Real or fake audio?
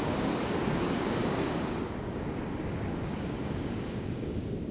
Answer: fake